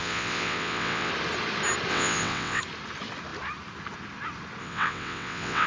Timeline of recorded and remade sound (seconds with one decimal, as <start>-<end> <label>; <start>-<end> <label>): 0.0-1.1 remade; 1.1-1.9 recorded; 1.9-2.6 remade; 2.6-4.6 recorded; 4.6-5.7 remade